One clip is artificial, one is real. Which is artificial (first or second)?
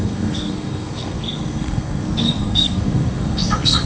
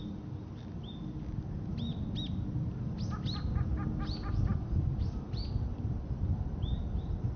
first